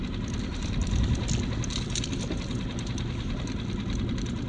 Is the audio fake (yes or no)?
no